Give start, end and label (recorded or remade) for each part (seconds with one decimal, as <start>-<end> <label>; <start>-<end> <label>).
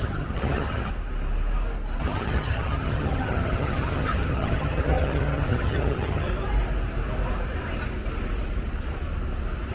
0.0-0.9 remade; 0.9-2.0 recorded; 2.0-6.3 remade; 6.3-9.7 recorded